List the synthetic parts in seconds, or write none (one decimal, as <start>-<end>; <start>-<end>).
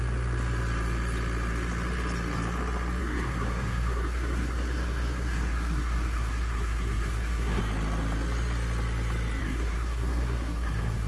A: 3.0-7.6; 9.4-11.1